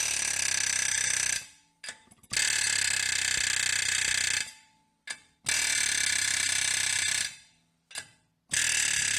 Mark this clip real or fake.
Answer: real